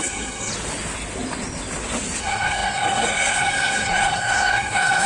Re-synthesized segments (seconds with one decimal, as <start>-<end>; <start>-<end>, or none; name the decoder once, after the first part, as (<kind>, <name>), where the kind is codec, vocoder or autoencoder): 0.0-0.5 (codec, SNAC); 2.2-5.1